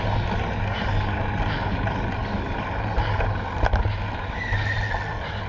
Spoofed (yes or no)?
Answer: no